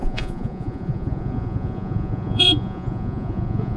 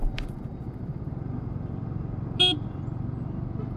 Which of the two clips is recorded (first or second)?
second